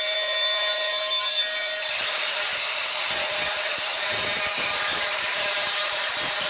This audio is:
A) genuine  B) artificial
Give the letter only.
B